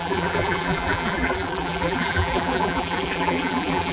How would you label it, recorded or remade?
remade